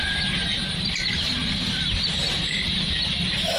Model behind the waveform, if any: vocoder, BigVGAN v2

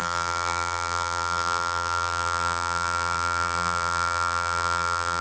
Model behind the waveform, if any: vocoder, BigVGAN v2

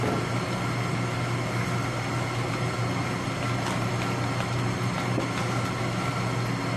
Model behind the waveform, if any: vocoder, BigVGAN v2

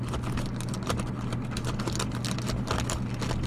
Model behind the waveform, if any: none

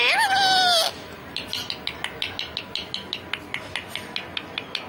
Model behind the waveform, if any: none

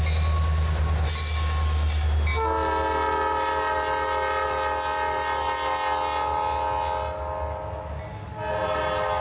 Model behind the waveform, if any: none